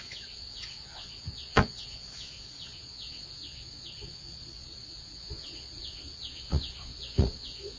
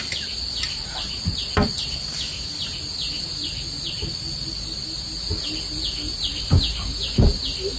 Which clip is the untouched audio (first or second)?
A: second